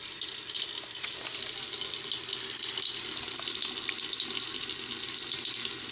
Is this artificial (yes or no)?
no